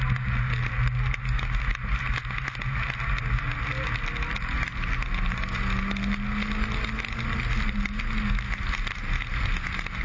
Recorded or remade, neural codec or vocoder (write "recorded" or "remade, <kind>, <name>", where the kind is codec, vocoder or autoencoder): recorded